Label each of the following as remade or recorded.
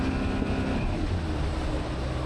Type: recorded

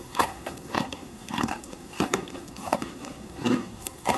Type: remade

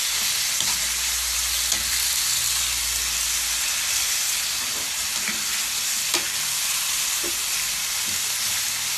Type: recorded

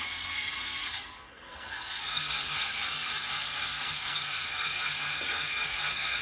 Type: remade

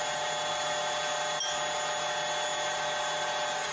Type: recorded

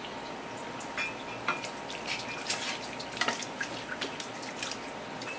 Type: recorded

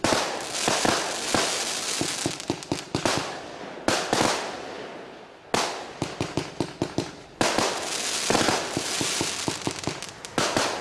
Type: recorded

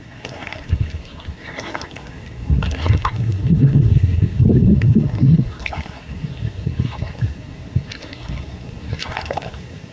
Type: remade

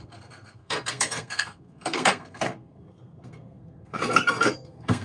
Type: remade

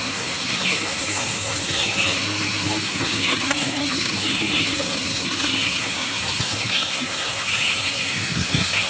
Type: remade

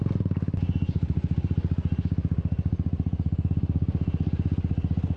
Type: recorded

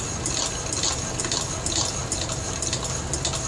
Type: recorded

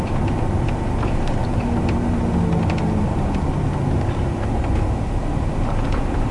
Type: recorded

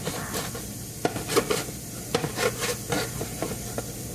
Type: recorded